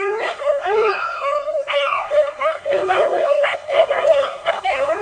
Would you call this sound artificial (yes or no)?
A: yes